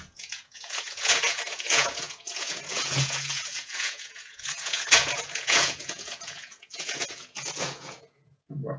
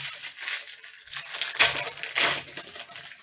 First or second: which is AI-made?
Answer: first